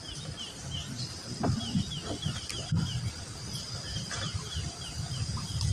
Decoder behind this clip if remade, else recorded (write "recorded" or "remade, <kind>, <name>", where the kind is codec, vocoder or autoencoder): recorded